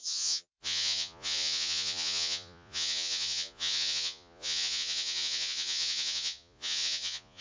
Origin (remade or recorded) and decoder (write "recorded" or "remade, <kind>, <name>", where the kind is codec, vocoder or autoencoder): remade, vocoder, Vocos